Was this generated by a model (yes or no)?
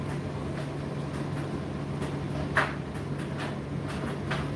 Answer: no